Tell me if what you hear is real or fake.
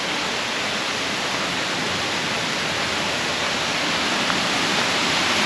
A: real